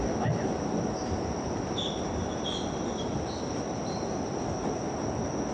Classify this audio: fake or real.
real